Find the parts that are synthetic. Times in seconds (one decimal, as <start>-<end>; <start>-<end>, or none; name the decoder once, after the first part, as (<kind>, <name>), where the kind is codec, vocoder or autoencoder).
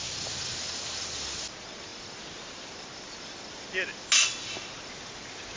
none